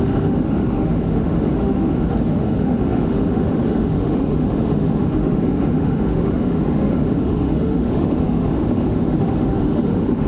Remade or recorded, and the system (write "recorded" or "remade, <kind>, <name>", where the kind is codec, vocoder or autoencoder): remade, autoencoder, DAC-VAE